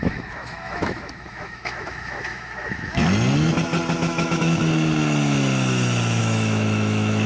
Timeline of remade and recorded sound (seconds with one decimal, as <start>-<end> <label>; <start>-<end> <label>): 0.0-3.0 remade; 3.0-4.0 recorded; 4.0-4.6 remade; 4.6-6.2 recorded; 6.2-7.3 remade